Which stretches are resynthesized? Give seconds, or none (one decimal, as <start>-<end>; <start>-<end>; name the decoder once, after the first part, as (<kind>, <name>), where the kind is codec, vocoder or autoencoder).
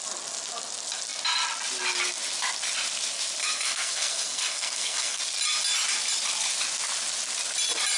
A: 3.4-5.2 (codec, SNAC)